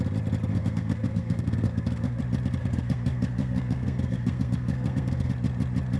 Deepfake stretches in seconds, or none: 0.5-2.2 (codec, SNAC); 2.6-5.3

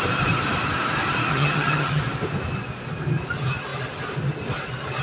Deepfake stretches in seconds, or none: 1.3-2.0 (vocoder, HiFi-GAN)

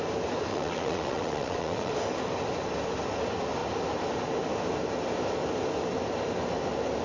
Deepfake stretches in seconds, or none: 0.5-1.9 (vocoder, WaveNeXt)

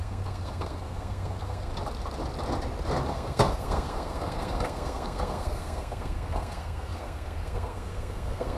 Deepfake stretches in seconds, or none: 0.0-1.7 (codec, SNAC); 3.1-8.6

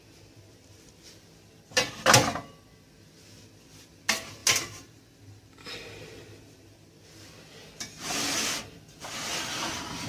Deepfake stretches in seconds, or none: none